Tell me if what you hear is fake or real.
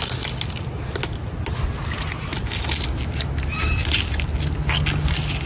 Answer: real